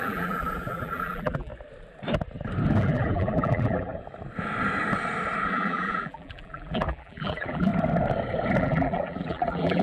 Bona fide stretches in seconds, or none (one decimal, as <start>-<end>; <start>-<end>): 1.5-2.8; 3.9-5.5; 7.7-8.6